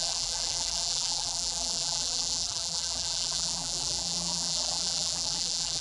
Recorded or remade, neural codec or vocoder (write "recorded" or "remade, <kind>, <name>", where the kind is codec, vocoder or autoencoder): remade, vocoder, BigVGAN v2